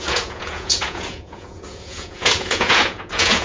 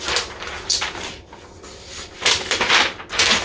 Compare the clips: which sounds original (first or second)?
second